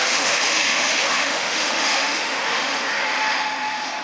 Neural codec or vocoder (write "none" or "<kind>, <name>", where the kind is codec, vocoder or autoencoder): autoencoder, DAC-VAE